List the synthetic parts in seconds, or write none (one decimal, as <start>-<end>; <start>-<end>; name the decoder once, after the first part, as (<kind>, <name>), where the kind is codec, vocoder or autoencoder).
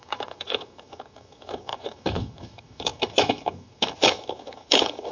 0.0-5.1 (autoencoder, DAC-VAE)